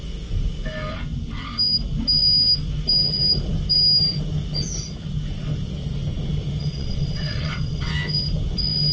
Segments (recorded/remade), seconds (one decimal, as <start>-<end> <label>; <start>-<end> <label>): 0.0-6.6 recorded; 6.6-7.9 remade; 7.9-8.9 recorded